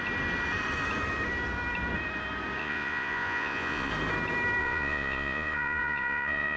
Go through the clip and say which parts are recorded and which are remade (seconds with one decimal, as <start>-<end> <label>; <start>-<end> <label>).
0.0-2.6 recorded; 2.6-3.9 remade; 3.9-4.6 recorded; 4.6-6.6 remade

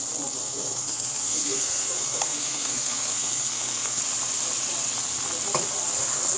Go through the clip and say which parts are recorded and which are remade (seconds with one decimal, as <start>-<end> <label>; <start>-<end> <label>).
0.0-0.4 recorded; 0.4-4.0 remade; 4.0-6.4 recorded

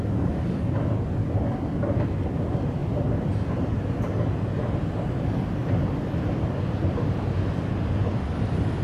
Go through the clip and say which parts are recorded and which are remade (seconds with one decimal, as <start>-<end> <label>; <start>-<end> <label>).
0.0-2.8 recorded; 2.8-3.5 remade; 3.5-5.6 recorded; 5.6-7.5 remade; 7.5-8.8 recorded

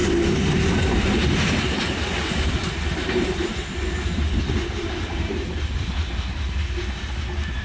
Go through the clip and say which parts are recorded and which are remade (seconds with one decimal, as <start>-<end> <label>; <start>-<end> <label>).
0.0-7.6 recorded

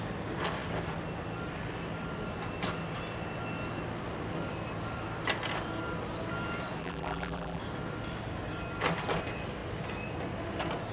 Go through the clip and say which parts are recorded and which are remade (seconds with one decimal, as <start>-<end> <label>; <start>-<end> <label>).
0.0-6.8 recorded; 6.8-7.6 remade; 7.6-10.9 recorded

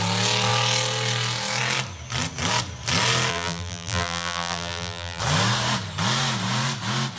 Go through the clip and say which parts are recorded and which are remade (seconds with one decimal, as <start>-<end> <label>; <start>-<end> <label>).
0.0-3.3 recorded; 3.3-5.2 remade; 5.2-7.2 recorded

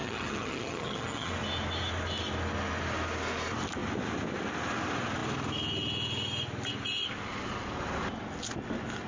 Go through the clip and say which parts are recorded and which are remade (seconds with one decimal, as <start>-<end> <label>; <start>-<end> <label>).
0.0-1.3 remade; 1.3-9.1 recorded

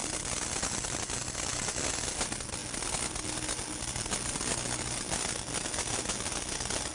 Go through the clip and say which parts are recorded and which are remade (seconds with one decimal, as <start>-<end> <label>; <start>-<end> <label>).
0.0-1.9 remade; 1.9-6.9 recorded